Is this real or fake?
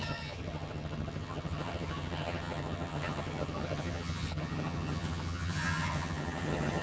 fake